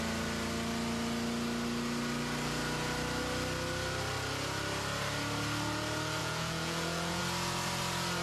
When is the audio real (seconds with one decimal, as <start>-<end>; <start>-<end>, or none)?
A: 0.0-6.2; 7.2-8.2